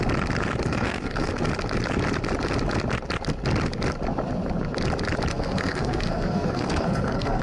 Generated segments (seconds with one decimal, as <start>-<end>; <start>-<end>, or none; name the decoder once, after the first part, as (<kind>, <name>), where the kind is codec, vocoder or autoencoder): 0.7-1.3 (codec, SNAC); 5.3-7.4